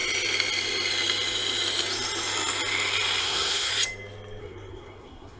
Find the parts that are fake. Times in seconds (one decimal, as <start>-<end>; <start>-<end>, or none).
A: 3.2-3.7; 4.4-5.4